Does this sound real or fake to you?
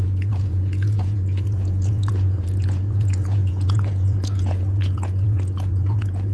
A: fake